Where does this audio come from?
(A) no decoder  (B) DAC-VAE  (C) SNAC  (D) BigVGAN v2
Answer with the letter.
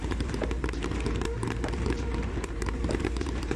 D